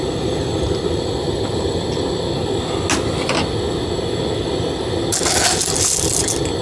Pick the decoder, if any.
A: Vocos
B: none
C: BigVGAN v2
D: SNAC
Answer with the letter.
B